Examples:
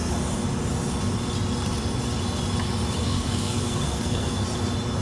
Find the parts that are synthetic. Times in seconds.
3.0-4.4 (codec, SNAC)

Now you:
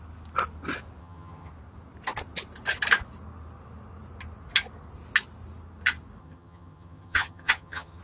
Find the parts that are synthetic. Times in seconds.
1.0-1.5 (vocoder, HiFi-GAN); 6.2-8.0

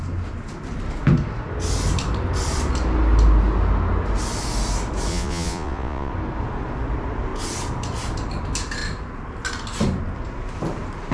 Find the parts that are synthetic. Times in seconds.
5.1-6.1 (vocoder, Vocos)

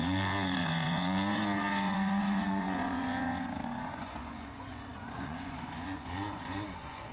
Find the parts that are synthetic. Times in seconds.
0.0-7.1 (vocoder, Vocos)

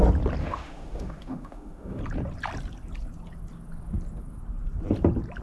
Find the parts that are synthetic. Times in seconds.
0.4-2.0 (autoencoder, DAC-VAE)

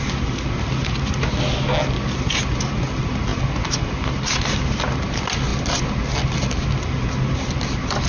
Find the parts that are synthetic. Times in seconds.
none

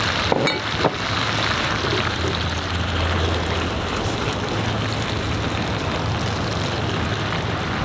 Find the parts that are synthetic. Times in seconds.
1.9-5.3 (vocoder, BigVGAN v2)